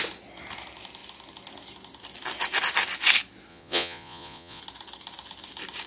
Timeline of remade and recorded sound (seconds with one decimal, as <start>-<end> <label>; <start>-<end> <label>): 0.0-3.5 recorded; 3.5-4.6 remade; 4.6-5.9 recorded